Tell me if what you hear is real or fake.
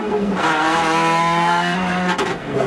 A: fake